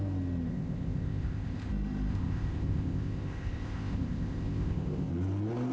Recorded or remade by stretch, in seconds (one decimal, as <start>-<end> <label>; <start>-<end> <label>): 0.0-0.5 recorded; 0.5-1.7 remade; 1.7-2.1 recorded; 2.1-5.1 remade; 5.1-5.7 recorded